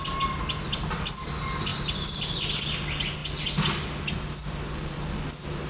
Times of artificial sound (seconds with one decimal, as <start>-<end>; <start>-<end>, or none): none